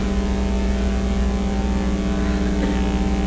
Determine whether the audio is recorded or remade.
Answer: recorded